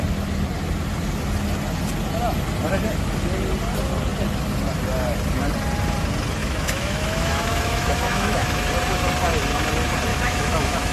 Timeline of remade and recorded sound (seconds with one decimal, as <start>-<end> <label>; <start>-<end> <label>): 0.0-6.4 recorded; 6.4-8.7 remade; 8.7-10.1 recorded; 10.1-10.9 remade